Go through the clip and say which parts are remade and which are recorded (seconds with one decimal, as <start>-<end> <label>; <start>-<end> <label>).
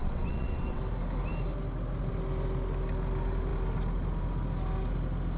0.0-0.8 remade; 0.8-5.4 recorded